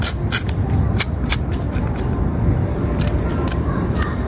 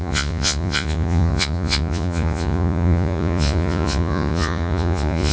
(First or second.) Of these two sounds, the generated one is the second